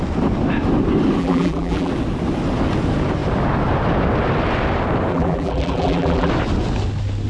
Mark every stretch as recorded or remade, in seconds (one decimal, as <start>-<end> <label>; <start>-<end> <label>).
0.0-1.2 recorded; 1.2-1.9 remade; 1.9-5.1 recorded; 5.1-6.3 remade; 6.3-7.3 recorded